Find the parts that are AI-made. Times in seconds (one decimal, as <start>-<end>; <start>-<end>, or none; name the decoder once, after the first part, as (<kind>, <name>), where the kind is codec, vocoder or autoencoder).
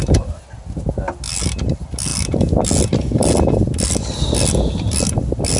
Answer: none